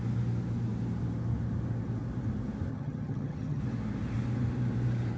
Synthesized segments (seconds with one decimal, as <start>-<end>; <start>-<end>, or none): 2.7-3.6